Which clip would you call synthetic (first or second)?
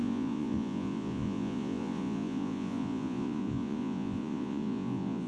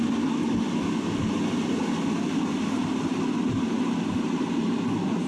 first